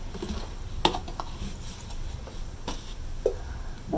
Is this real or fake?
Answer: real